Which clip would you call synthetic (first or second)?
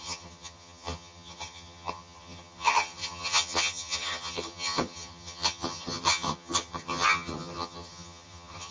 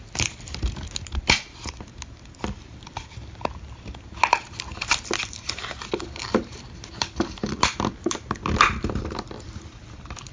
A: first